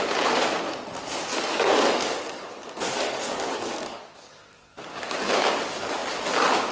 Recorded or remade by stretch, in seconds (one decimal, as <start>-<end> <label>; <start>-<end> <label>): 0.0-1.3 recorded; 1.3-5.3 remade; 5.3-6.7 recorded